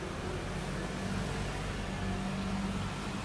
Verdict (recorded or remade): recorded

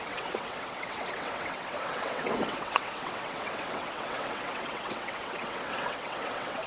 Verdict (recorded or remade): remade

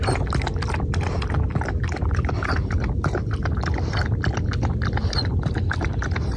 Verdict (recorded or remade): recorded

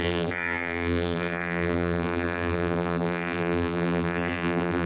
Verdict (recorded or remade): remade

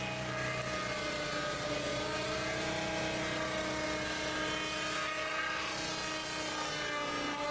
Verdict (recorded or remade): recorded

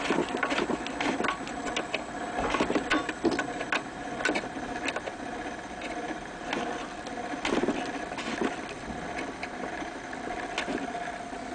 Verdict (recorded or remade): recorded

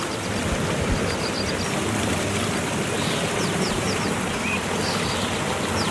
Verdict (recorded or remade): recorded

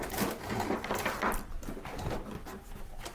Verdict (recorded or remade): recorded